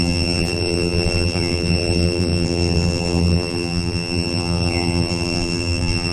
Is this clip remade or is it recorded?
remade